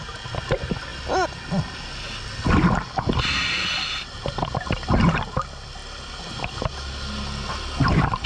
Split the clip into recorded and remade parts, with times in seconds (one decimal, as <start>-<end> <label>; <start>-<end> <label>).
0.0-8.3 recorded